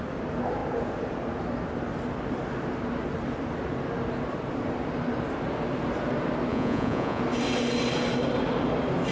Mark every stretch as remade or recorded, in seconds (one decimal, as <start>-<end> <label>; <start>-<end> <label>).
0.0-6.5 recorded; 6.5-7.2 remade; 7.2-9.1 recorded